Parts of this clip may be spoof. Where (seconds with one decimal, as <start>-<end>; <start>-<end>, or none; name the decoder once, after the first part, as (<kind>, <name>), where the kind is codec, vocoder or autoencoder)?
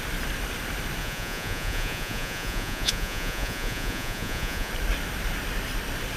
1.0-4.7 (vocoder, Vocos)